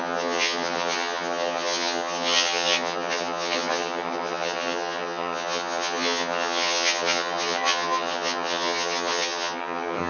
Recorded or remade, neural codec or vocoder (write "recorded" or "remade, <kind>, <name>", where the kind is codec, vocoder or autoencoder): remade, vocoder, HiFi-GAN